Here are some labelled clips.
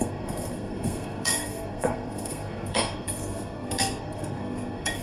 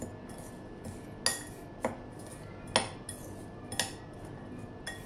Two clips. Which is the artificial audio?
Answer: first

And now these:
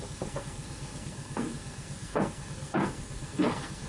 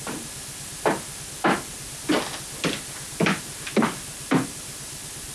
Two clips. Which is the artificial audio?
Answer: first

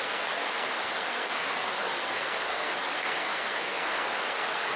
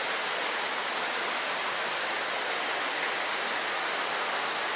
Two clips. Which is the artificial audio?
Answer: first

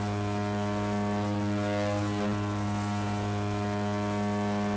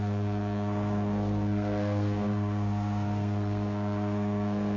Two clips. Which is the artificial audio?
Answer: second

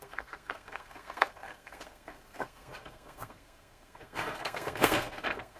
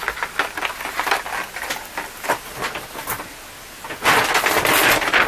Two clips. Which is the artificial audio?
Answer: first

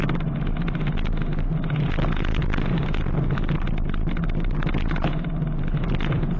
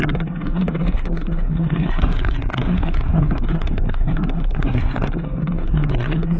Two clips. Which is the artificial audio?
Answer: second